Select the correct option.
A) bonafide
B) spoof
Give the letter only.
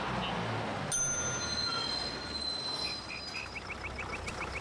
A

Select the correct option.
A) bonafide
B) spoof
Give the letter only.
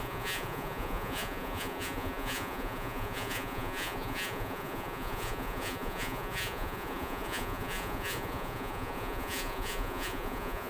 B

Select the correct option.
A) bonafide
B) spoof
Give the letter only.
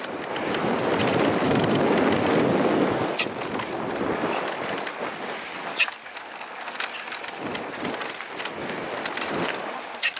A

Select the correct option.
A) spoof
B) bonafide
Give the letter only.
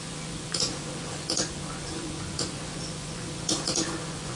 A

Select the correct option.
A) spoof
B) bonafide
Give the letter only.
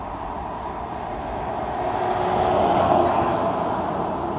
B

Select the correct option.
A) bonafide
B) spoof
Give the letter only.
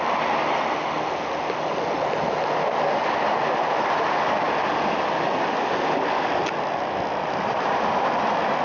A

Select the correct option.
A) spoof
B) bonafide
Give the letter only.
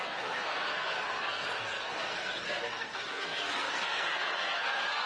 A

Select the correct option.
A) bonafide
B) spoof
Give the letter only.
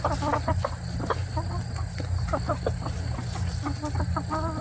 A